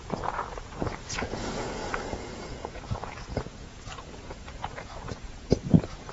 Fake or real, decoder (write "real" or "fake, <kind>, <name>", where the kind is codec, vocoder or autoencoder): fake, vocoder, Vocos